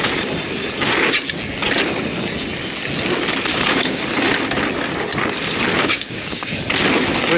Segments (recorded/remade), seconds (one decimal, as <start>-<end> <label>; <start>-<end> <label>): 0.0-3.5 recorded; 3.5-4.0 remade; 4.0-5.7 recorded; 5.7-6.5 remade; 6.5-7.4 recorded